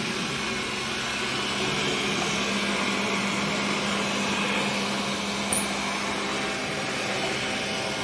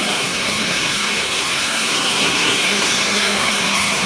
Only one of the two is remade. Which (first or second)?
second